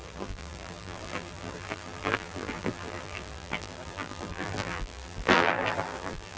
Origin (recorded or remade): remade